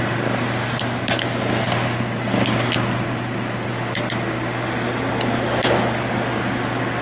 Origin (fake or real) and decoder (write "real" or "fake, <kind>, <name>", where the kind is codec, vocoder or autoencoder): real